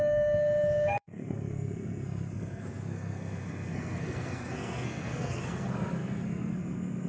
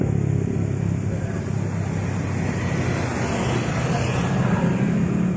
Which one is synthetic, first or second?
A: first